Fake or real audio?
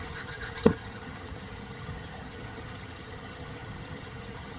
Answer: fake